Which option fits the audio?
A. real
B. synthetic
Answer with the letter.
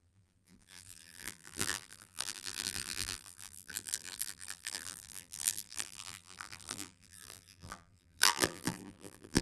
B